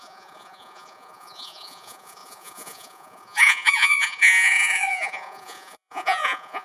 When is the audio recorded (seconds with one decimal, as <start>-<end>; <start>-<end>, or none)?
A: none